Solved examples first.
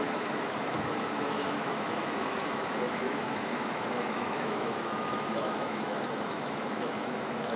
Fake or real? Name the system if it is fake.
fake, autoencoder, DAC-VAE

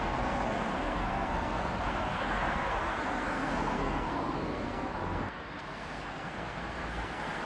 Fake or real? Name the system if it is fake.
fake, codec, SNAC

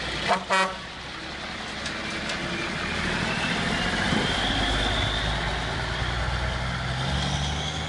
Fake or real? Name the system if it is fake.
real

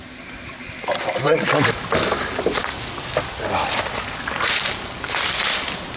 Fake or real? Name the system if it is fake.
real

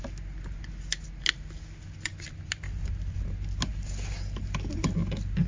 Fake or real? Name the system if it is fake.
real